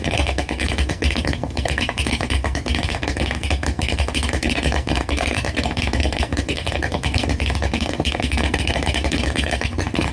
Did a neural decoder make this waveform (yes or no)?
yes